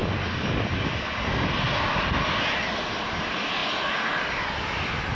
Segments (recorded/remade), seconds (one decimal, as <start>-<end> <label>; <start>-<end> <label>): 0.0-5.1 recorded